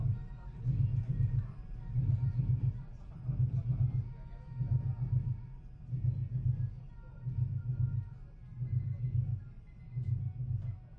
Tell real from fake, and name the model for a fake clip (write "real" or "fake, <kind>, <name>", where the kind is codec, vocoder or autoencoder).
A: real